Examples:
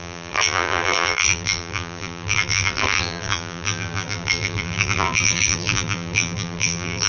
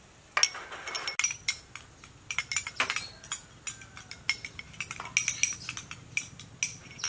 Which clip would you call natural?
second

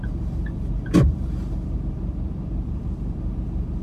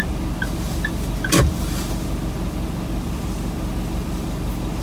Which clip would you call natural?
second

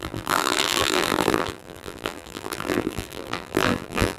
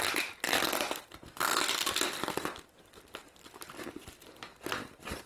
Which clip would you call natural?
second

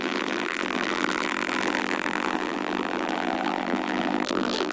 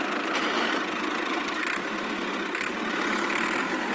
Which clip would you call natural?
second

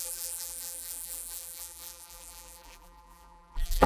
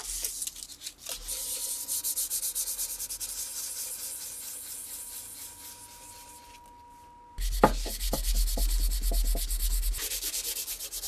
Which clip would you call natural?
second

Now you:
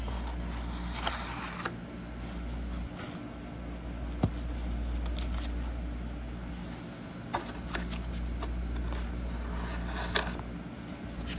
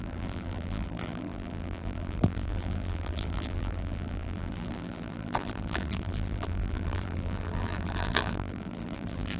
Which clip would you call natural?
first